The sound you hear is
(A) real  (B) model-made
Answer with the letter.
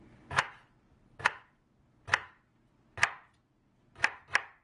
A